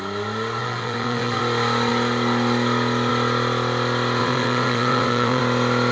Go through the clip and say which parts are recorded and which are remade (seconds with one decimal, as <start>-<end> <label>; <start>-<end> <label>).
0.0-0.6 recorded; 0.6-1.4 remade; 1.4-4.2 recorded; 4.2-5.4 remade; 5.4-5.9 recorded